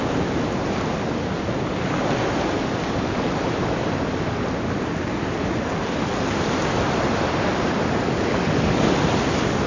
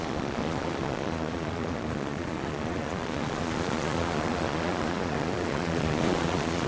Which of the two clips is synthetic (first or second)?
second